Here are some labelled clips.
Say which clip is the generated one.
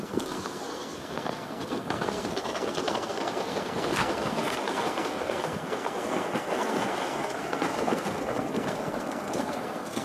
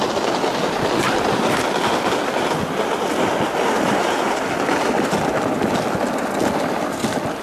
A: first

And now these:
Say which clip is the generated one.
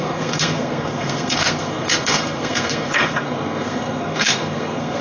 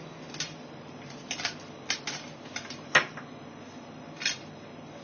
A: first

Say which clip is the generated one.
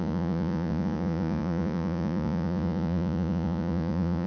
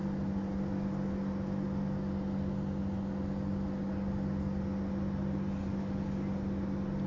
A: first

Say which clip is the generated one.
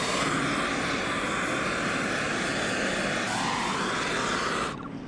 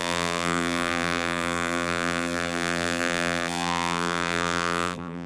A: second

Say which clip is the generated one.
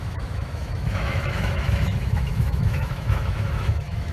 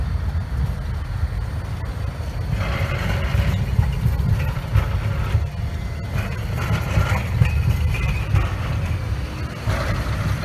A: first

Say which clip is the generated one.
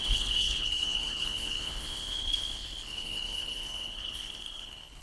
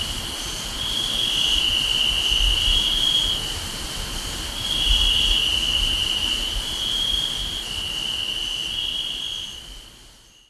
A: first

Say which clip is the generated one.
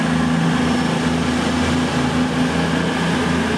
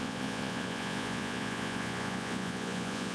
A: second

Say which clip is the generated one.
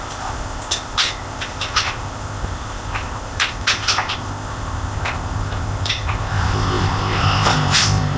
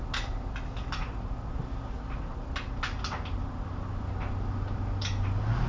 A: first